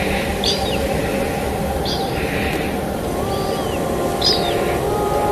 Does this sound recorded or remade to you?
recorded